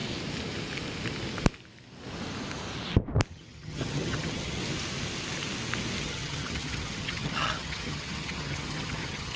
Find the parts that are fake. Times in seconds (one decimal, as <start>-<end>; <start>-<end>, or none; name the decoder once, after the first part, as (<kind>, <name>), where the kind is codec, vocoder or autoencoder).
3.3-4.6 (vocoder, HiFi-GAN); 6.0-9.4